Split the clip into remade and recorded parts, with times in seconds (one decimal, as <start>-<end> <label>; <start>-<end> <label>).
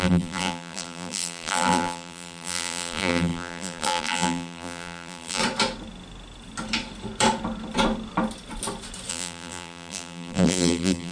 0.0-5.4 remade; 5.4-9.1 recorded; 9.1-11.1 remade